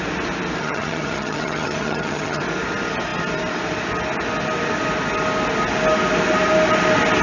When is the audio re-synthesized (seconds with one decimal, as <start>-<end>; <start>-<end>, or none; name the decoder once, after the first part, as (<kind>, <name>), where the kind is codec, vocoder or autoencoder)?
0.6-2.4 (vocoder, HiFi-GAN)